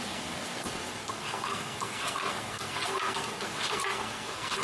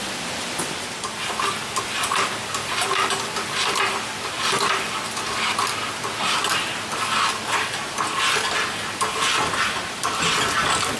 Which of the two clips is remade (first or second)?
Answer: first